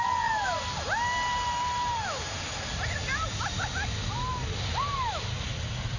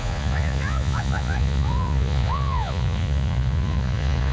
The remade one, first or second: second